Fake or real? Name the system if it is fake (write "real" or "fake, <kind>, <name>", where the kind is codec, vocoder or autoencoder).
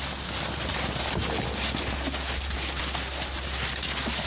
real